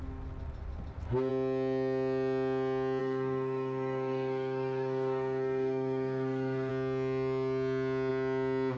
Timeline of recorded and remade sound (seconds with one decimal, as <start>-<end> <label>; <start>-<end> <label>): 0.0-3.0 recorded; 3.0-6.7 remade; 6.7-8.8 recorded